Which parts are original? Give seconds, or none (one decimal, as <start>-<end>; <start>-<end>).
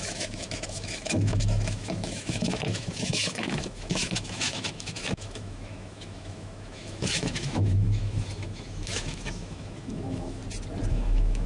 10.4-10.9